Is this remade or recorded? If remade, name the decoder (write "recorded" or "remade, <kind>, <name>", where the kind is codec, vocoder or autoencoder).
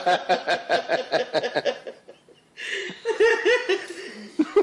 remade, vocoder, BigVGAN v2